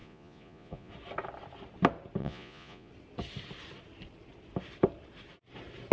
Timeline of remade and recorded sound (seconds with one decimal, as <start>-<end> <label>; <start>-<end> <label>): 0.0-0.9 remade; 0.9-2.2 recorded; 2.2-2.9 remade; 2.9-5.9 recorded